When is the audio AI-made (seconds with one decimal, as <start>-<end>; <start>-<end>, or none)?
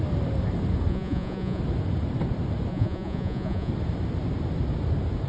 0.9-1.6; 2.7-3.7